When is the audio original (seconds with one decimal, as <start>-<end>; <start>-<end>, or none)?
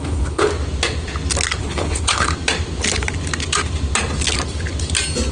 0.5-1.6; 2.3-5.3